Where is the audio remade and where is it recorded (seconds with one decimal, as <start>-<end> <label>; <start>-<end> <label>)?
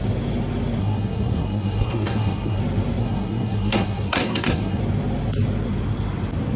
0.0-0.8 recorded; 0.8-2.6 remade; 2.6-3.0 recorded; 3.0-4.8 remade; 4.8-6.6 recorded